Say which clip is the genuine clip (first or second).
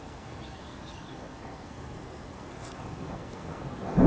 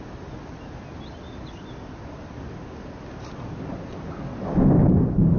second